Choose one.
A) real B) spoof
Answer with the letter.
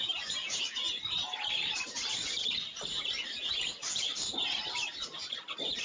A